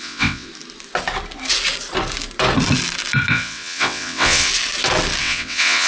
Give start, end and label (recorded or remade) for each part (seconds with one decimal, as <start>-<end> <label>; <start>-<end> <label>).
0.0-0.5 remade; 0.5-3.3 recorded; 3.3-4.5 remade; 4.5-5.2 recorded; 5.2-5.9 remade